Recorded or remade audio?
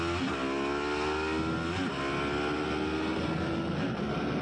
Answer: recorded